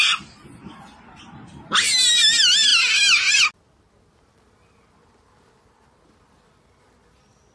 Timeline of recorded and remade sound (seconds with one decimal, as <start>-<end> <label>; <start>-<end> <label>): 0.0-7.5 recorded